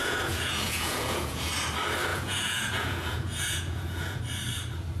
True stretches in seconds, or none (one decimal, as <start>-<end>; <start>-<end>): 1.5-2.1; 4.2-5.0